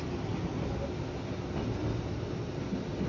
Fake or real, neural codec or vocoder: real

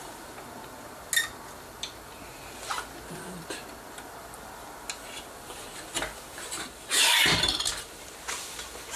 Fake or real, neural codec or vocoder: real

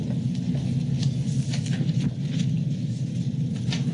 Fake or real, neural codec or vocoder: real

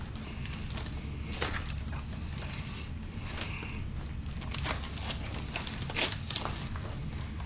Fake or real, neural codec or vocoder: real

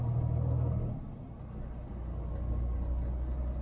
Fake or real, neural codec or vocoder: real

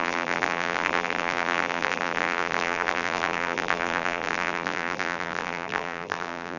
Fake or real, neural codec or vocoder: fake, vocoder, BigVGAN v2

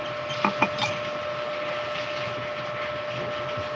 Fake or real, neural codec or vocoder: real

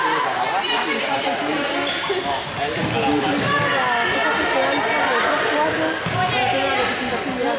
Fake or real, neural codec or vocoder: real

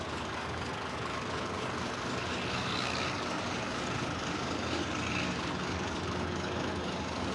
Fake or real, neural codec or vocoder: fake, codec, DAC